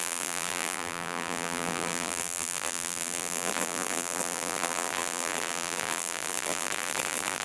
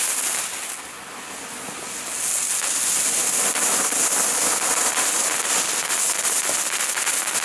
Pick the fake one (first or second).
first